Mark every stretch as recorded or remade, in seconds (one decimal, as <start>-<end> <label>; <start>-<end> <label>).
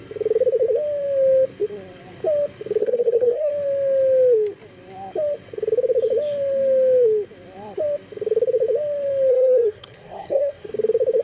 0.0-2.8 recorded; 2.8-3.5 remade; 3.5-9.3 recorded; 9.3-10.7 remade; 10.7-11.2 recorded